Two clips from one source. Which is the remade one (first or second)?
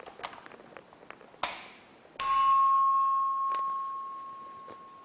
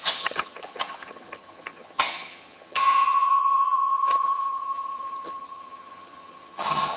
second